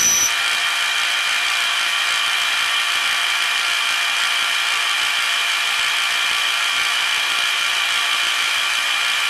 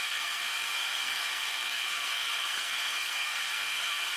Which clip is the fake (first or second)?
second